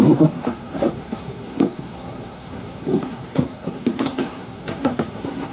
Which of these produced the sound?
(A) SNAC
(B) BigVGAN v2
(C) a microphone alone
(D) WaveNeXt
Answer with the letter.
A